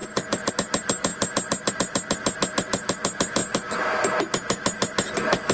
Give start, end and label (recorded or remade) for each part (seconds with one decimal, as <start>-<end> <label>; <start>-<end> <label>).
0.0-0.5 remade; 0.5-5.5 recorded